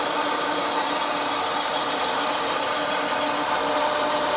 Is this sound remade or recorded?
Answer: recorded